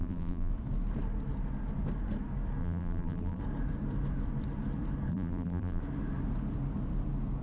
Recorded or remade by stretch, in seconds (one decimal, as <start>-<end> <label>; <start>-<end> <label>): 0.0-0.5 remade; 0.5-2.6 recorded; 2.6-3.4 remade; 3.4-5.1 recorded; 5.1-5.8 remade; 5.8-7.4 recorded